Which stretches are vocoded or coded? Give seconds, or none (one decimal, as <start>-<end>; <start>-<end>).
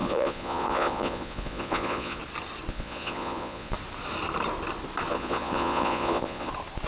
0.0-2.2; 2.7-3.7; 5.1-6.5